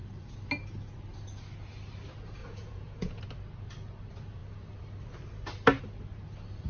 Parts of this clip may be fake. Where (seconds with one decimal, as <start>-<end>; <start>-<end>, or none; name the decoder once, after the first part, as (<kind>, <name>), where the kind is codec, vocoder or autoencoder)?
2.4-3.2 (vocoder, Vocos)